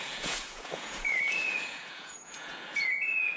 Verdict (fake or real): fake